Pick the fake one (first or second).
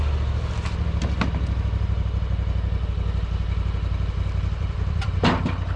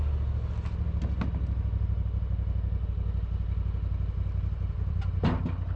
first